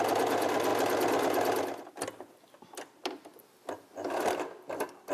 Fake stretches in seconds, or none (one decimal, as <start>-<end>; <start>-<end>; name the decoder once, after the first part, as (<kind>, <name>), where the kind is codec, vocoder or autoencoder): none